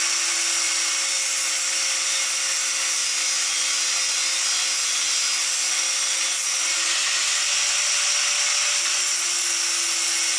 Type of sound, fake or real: real